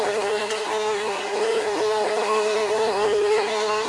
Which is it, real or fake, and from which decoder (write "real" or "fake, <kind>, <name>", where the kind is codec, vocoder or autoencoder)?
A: fake, codec, SNAC